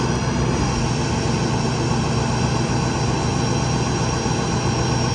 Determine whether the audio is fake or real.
real